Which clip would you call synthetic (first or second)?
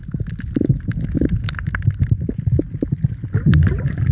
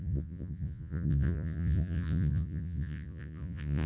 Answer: second